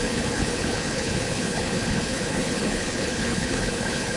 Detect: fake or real fake